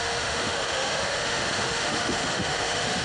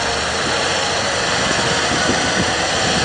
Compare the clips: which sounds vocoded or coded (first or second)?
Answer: first